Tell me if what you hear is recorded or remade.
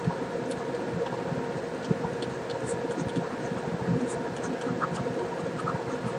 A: recorded